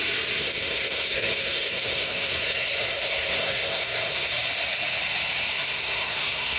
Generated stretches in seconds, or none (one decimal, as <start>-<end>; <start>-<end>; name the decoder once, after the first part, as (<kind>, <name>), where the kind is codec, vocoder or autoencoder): 0.4-4.3 (codec, SNAC); 5.5-6.6